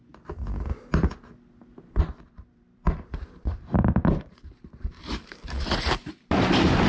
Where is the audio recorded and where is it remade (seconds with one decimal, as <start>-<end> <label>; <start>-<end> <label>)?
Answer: 0.0-2.5 recorded; 2.5-6.9 remade